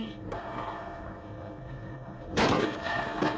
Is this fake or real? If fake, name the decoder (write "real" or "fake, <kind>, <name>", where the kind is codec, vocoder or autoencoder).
fake, codec, SNAC